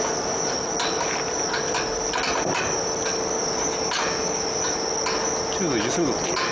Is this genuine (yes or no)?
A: yes